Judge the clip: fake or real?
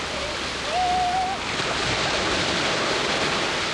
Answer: real